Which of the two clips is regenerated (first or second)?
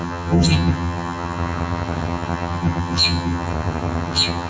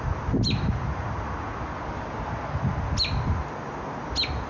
first